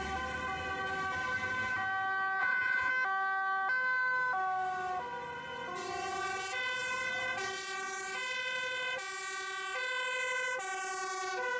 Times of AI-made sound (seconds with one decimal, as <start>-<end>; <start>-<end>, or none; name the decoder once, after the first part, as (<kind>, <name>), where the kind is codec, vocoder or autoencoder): 2.4-2.9 (vocoder, Vocos)